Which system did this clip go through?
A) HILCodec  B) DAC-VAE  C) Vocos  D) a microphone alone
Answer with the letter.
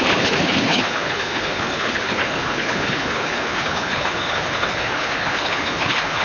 A